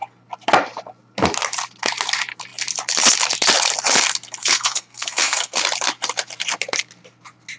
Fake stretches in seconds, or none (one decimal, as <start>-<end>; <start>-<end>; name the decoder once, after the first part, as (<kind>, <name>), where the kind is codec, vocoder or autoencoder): 4.4-5.6 (codec, SNAC)